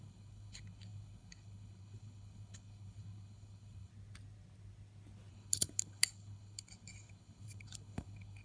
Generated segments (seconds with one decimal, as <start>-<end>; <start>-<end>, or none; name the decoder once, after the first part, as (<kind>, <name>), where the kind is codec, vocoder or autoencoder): 0.0-3.9 (codec, HILCodec); 5.3-8.4